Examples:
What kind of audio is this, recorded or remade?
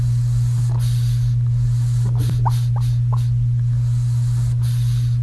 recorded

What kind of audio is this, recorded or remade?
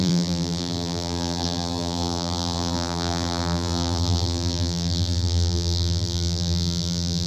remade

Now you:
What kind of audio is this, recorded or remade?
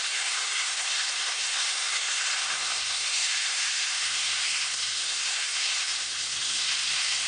remade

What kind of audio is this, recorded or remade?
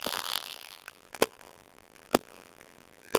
remade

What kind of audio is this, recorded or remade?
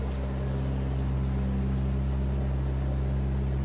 recorded